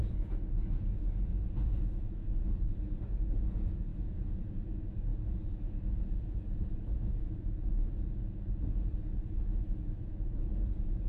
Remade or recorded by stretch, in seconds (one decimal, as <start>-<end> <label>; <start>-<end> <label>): 0.0-2.7 remade; 2.7-3.2 recorded; 3.2-11.1 remade